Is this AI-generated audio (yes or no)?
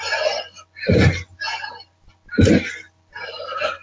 no